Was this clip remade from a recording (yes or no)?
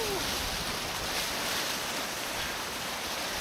no